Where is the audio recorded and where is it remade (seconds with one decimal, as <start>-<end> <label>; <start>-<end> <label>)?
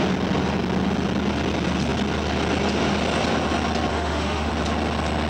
0.0-3.9 recorded; 3.9-4.5 remade; 4.5-5.3 recorded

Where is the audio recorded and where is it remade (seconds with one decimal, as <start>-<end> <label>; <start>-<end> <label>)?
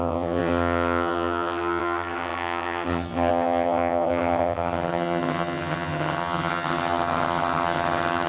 0.0-8.3 remade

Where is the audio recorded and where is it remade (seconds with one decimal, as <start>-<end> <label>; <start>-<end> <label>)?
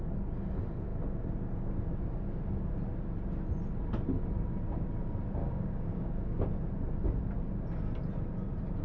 0.0-5.4 recorded; 5.4-6.4 remade; 6.4-8.8 recorded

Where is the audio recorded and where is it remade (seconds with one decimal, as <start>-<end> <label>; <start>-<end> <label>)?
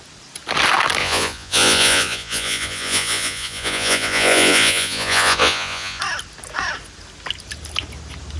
0.0-1.0 recorded; 1.0-6.0 remade; 6.0-8.4 recorded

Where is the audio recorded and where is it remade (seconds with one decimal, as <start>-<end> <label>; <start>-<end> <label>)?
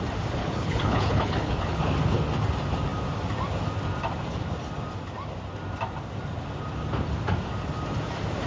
0.0-0.4 recorded; 0.4-1.8 remade; 1.8-8.5 recorded